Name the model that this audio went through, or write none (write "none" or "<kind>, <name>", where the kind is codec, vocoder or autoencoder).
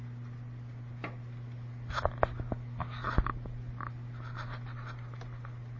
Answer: none